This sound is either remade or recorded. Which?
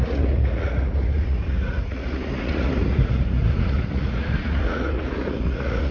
remade